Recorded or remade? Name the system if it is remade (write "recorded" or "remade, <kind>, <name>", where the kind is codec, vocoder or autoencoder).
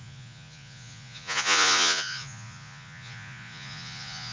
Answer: remade, vocoder, Vocos